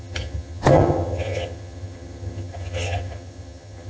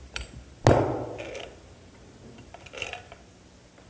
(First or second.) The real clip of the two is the second